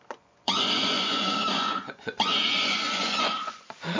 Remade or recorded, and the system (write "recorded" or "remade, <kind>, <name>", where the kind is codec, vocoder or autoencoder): remade, vocoder, Vocos